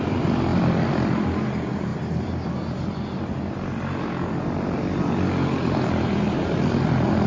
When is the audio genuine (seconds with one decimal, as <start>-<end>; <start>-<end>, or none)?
0.0-7.3